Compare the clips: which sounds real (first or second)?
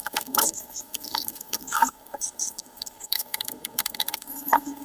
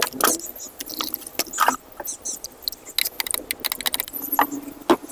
second